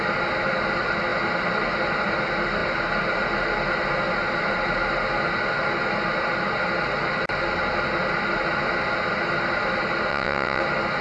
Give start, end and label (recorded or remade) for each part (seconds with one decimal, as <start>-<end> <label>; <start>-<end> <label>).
0.0-10.1 recorded; 10.1-10.6 remade; 10.6-11.0 recorded

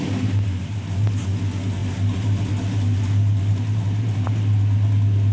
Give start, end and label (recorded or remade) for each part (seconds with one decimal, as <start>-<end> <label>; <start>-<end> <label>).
0.0-5.3 recorded

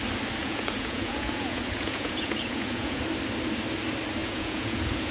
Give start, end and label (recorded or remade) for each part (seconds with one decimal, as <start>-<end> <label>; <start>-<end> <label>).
0.0-0.4 recorded; 0.4-3.0 remade; 3.0-4.2 recorded; 4.2-5.1 remade

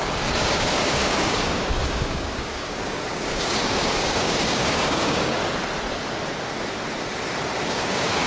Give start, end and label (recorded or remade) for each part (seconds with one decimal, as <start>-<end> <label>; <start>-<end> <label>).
0.0-5.4 remade; 5.4-7.7 recorded; 7.7-8.3 remade

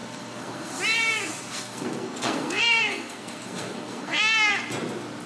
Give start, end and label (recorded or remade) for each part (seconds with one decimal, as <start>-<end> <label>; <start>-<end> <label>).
0.0-0.8 remade; 0.8-1.3 recorded; 1.3-4.5 remade; 4.5-5.3 recorded

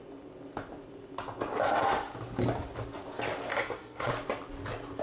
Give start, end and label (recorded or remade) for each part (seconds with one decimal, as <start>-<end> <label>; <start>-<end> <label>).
0.0-3.5 recorded; 3.5-4.1 remade; 4.1-5.0 recorded